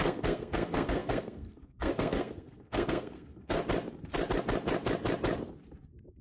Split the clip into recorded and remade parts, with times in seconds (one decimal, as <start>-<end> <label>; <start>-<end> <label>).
0.0-3.6 remade; 3.6-6.2 recorded